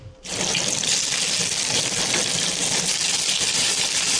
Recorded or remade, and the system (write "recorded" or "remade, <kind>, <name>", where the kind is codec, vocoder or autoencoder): recorded